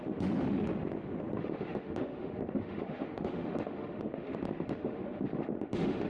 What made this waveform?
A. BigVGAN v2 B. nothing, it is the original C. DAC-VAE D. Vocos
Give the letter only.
C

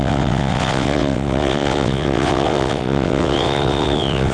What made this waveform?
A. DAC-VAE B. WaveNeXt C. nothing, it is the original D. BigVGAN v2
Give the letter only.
B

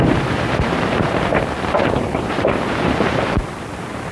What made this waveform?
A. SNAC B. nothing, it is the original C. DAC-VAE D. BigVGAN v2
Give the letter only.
D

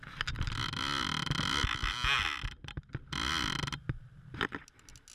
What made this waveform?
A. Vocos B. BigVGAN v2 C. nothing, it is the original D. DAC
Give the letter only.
C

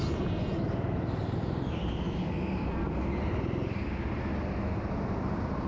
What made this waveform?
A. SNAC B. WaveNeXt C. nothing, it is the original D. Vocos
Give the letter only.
C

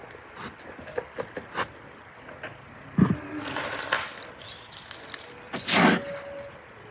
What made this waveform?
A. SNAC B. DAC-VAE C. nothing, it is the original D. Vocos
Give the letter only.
C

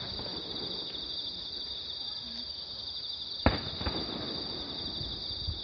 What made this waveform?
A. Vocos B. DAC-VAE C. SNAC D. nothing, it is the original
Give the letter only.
D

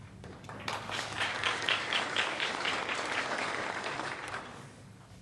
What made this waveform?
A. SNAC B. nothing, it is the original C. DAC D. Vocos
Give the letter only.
C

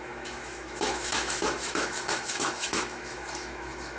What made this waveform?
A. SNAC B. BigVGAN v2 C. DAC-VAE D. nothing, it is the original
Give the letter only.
C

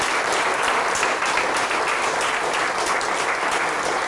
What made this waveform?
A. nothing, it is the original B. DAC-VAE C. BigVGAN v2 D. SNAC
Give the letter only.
A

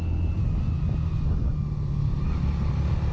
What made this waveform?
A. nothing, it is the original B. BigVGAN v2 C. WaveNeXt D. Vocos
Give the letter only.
A